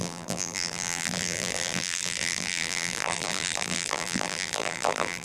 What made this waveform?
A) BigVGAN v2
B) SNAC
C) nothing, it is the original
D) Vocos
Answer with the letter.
A